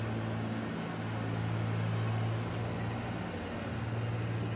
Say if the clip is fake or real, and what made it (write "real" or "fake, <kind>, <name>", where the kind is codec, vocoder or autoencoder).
real